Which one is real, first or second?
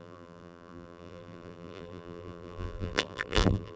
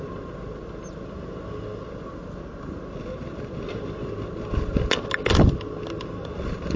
second